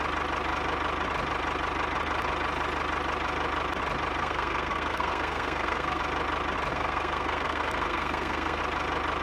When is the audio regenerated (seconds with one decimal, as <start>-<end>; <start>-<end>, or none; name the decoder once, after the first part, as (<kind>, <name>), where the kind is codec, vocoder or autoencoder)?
4.2-6.0 (codec, SNAC); 6.7-8.6